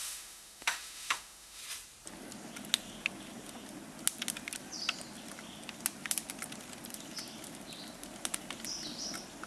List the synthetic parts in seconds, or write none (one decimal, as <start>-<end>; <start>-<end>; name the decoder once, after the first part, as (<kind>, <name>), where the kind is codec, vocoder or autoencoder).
0.0-1.6 (autoencoder, DAC-VAE)